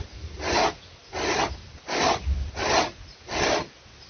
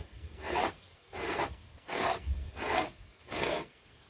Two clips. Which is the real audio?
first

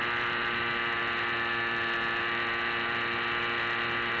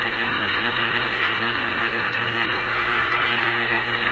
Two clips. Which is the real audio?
first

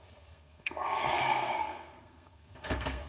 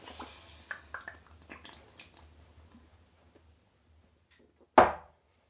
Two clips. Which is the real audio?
second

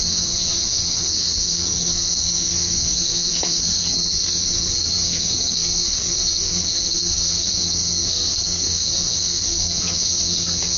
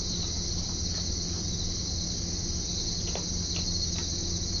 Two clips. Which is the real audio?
second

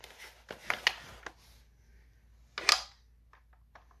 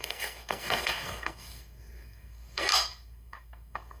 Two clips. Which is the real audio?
first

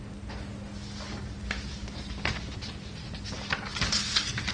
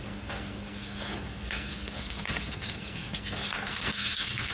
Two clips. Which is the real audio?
first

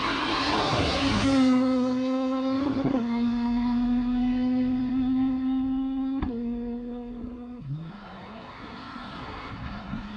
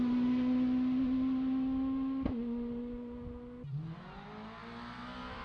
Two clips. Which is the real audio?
second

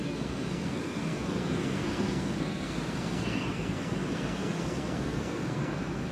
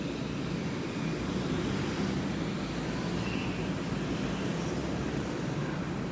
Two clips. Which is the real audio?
second